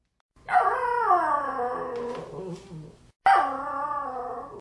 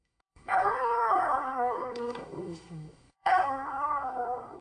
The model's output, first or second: second